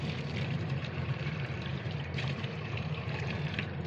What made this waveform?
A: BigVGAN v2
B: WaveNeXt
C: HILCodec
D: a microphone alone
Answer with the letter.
A